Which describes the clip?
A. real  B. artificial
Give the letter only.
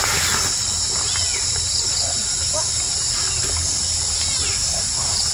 A